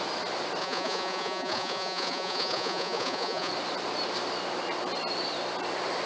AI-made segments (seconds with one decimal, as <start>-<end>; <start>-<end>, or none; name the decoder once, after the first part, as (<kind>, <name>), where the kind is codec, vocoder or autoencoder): 0.6-3.5 (vocoder, Vocos)

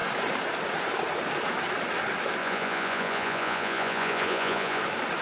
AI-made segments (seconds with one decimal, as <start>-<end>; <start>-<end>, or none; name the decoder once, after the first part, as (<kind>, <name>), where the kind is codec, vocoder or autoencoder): 2.4-4.8 (vocoder, Vocos)